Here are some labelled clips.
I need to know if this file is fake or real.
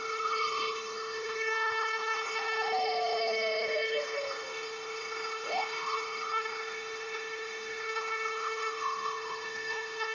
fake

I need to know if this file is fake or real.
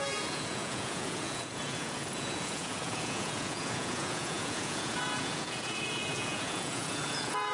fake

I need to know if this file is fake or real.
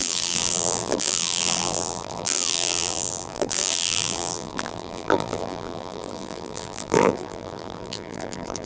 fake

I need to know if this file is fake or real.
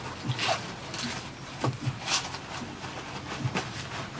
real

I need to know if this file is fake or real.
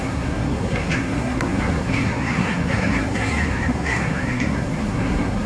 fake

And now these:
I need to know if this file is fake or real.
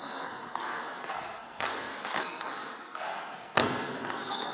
fake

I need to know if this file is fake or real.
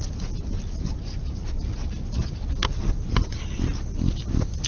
real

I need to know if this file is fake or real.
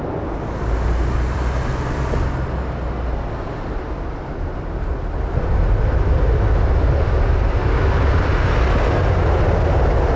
real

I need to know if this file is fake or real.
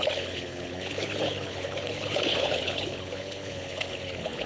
fake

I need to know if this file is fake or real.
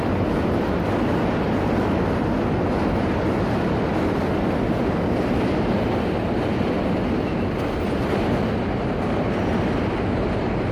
real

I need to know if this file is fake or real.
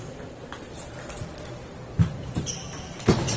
real